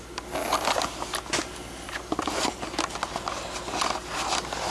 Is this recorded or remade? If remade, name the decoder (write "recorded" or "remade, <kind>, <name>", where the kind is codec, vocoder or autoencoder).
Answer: recorded